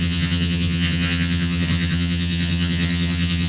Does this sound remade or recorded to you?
remade